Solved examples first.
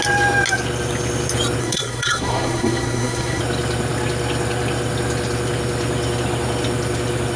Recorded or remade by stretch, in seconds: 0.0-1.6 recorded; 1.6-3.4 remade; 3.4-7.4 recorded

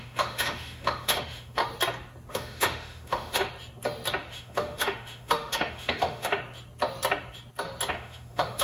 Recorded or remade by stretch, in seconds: 0.0-1.6 remade; 1.6-2.3 recorded; 2.3-3.5 remade; 3.5-4.3 recorded; 4.3-6.4 remade; 6.4-7.9 recorded; 7.9-8.6 remade